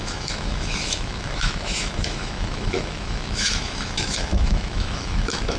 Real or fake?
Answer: fake